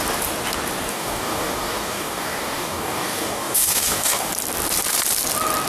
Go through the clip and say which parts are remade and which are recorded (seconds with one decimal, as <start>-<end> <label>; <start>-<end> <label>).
0.0-0.9 recorded; 0.9-4.3 remade; 4.3-5.7 recorded